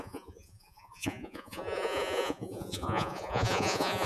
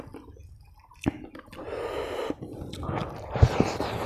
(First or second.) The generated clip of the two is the first